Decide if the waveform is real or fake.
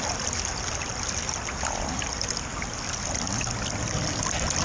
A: real